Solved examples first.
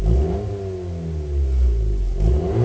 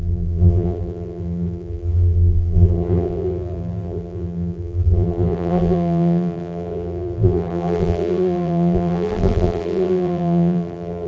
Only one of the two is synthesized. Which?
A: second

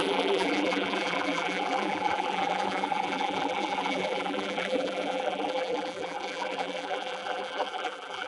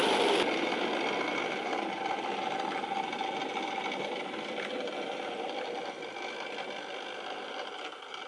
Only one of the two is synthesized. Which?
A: first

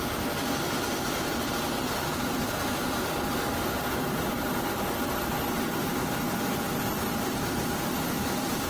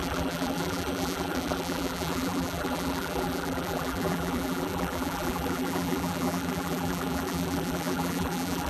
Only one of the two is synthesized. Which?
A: second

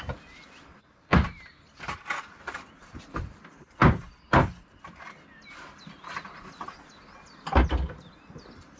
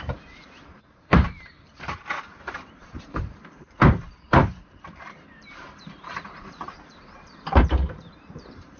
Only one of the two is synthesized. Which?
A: second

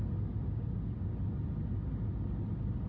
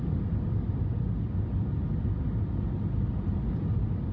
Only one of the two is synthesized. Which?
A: second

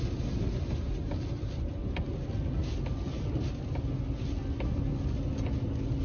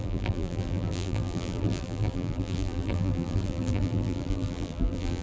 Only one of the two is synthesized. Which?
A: second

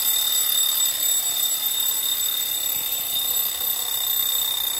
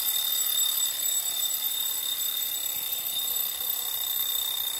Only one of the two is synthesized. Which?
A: second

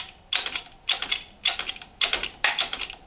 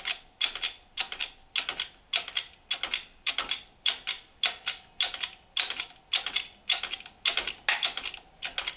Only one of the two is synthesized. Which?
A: first